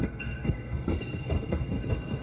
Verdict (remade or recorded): remade